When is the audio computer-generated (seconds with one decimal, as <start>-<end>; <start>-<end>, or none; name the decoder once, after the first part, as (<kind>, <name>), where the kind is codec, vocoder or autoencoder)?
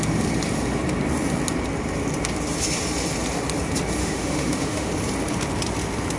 4.0-4.9 (autoencoder, DAC-VAE)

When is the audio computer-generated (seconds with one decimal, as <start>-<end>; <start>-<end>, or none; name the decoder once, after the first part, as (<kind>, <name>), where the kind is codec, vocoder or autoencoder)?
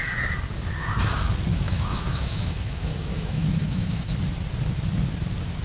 1.5-4.1 (autoencoder, DAC-VAE)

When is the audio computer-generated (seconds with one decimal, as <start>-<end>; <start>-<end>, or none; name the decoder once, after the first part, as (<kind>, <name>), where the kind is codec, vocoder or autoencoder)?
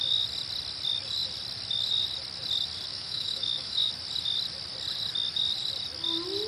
2.9-3.9 (autoencoder, DAC-VAE)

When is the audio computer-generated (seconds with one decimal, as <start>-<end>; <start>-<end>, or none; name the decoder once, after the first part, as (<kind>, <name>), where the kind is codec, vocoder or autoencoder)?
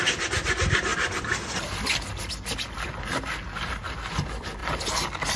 none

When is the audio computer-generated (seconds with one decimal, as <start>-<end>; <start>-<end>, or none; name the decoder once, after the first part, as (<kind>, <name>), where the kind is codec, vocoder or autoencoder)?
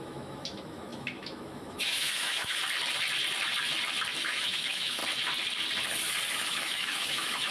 0.0-2.6 (autoencoder, DAC-VAE); 4.2-5.0; 6.3-7.5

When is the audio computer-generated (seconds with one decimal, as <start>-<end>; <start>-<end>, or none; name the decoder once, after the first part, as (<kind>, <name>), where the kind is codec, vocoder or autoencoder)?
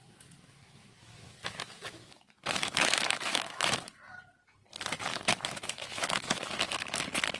0.0-3.8 (autoencoder, DAC-VAE); 5.1-6.4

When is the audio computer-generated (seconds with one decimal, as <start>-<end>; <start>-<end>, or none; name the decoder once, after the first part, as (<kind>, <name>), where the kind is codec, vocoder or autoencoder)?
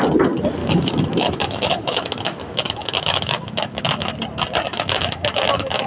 0.6-4.1 (autoencoder, DAC-VAE); 4.7-5.9